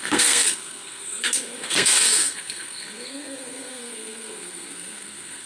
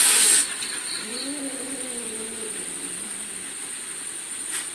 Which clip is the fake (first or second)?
first